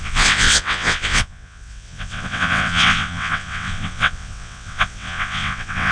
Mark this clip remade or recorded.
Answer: remade